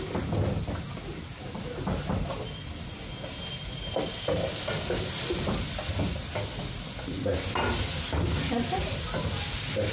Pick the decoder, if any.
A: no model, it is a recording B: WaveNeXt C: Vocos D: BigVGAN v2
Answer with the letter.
A